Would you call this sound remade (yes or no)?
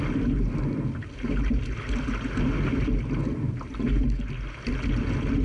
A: no